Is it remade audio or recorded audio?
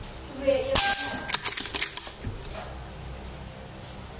recorded